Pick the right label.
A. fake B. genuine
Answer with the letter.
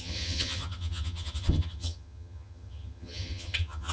A